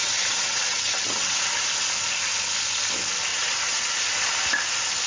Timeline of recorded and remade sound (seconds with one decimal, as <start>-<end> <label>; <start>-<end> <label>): 0.0-1.4 remade; 1.4-3.3 recorded; 3.3-3.9 remade; 3.9-5.1 recorded